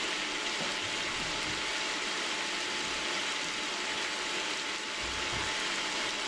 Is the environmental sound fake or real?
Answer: real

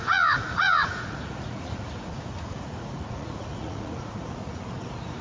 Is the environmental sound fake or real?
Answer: fake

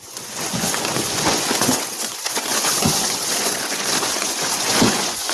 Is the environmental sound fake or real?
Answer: fake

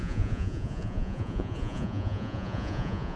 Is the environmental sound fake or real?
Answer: fake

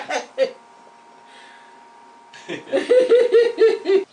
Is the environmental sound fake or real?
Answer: real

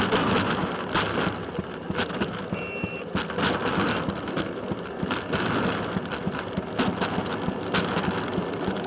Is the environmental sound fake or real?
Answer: real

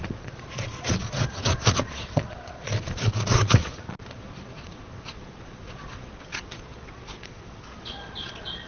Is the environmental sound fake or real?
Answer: fake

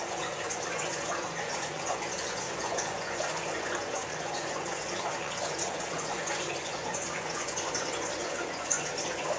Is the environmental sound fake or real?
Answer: fake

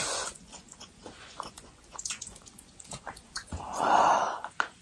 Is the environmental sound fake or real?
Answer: fake